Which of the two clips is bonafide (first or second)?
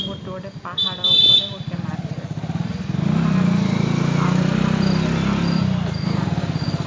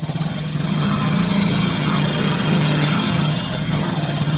first